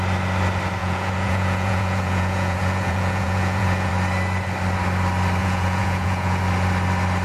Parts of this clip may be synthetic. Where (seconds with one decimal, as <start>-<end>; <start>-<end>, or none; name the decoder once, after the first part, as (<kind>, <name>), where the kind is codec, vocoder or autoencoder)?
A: 0.8-3.9 (vocoder, Vocos); 5.4-6.4